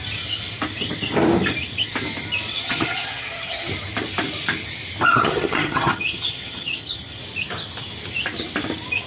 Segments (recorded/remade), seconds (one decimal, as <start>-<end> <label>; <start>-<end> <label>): 0.0-2.5 recorded; 2.5-3.7 remade; 3.7-5.1 recorded; 5.1-7.2 remade; 7.2-9.1 recorded